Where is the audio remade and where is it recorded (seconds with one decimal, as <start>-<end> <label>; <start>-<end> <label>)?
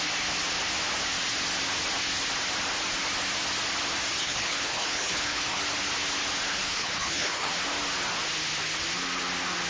0.0-4.2 recorded; 4.2-5.6 remade; 5.6-6.5 recorded; 6.5-7.5 remade; 7.5-9.7 recorded